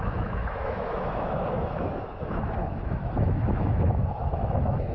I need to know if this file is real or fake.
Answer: fake